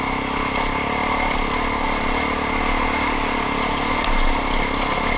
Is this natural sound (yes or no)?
yes